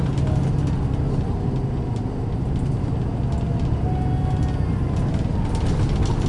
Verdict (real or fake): real